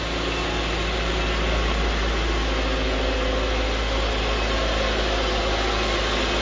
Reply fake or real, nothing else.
real